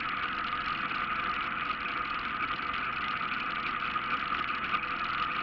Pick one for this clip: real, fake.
real